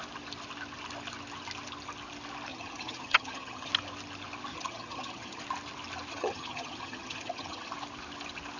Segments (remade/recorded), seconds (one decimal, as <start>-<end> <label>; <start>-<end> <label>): 0.0-2.5 recorded; 2.5-3.7 remade; 3.7-4.5 recorded; 4.5-5.4 remade; 5.4-6.1 recorded; 6.1-7.7 remade; 7.7-8.6 recorded